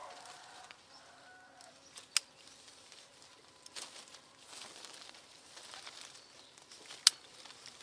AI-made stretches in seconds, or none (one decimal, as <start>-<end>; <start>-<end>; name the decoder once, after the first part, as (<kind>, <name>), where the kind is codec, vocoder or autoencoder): none